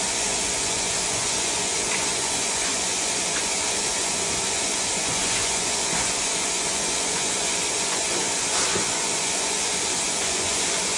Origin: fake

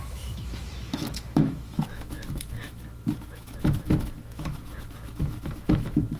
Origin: fake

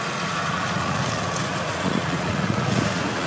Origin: fake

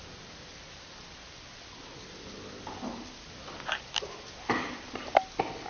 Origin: real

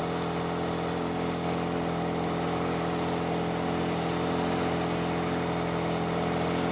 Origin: real